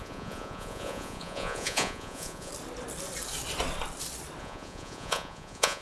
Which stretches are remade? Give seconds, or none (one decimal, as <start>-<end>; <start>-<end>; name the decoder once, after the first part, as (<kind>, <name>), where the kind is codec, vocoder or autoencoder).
0.0-2.5 (vocoder, Vocos); 4.4-5.8